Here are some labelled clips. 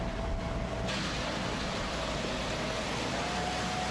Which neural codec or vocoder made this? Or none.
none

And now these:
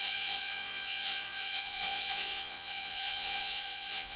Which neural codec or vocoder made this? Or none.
vocoder, Vocos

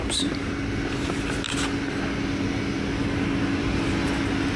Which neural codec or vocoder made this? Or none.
none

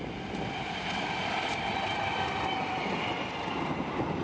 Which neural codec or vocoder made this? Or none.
none